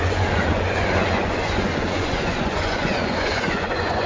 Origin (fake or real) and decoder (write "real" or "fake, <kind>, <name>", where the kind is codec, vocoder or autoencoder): fake, vocoder, Vocos